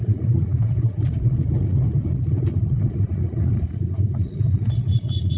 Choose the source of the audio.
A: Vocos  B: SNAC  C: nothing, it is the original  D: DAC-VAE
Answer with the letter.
A